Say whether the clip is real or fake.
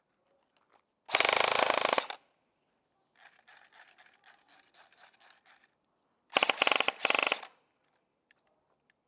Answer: real